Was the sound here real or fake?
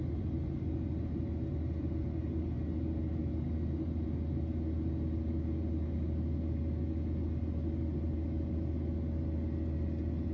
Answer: real